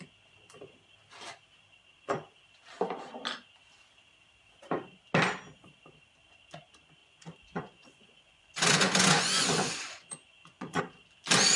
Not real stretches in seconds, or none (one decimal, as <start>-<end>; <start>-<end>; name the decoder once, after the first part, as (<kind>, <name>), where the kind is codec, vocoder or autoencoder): 7.0-10.8 (vocoder, Vocos)